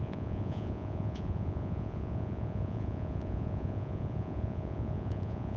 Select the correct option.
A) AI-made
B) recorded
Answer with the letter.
A